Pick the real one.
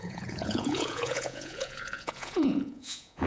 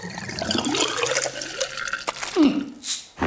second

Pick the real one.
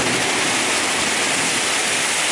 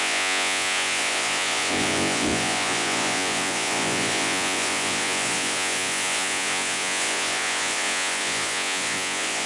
first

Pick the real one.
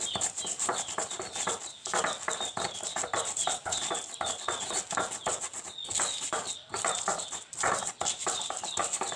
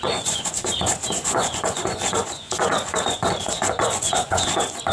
first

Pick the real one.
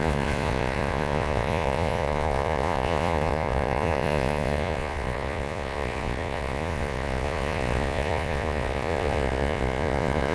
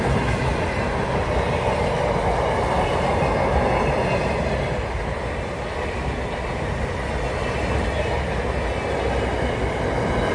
second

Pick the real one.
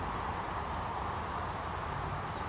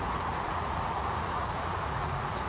first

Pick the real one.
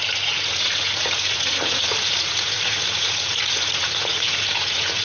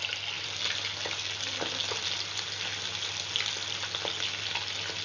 second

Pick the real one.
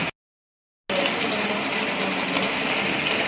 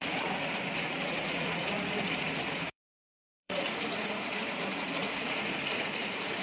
first